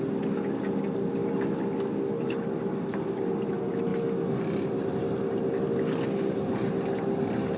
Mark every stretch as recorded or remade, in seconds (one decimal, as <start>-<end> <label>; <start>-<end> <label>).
0.0-7.6 recorded